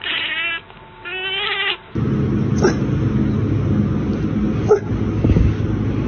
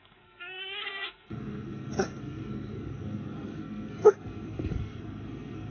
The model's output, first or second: second